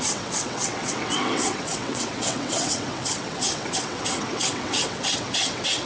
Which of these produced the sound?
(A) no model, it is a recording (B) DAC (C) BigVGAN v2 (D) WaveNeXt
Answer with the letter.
D